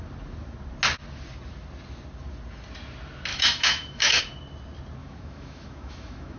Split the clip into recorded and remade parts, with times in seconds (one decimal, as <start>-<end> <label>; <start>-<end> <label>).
0.0-3.3 recorded; 3.3-4.2 remade; 4.2-5.0 recorded; 5.0-6.4 remade